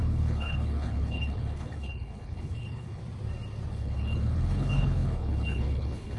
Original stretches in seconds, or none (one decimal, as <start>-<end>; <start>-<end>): 3.0-3.7